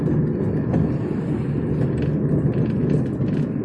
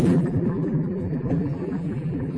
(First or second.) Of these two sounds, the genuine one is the first